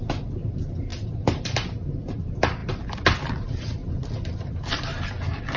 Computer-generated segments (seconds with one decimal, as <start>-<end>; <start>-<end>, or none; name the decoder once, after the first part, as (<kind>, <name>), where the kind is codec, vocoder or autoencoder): 3.8-5.0 (vocoder, BigVGAN v2)